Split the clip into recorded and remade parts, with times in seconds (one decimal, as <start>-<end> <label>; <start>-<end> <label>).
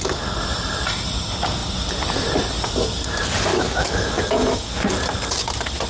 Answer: 0.0-3.5 recorded; 3.5-4.7 remade; 4.7-5.9 recorded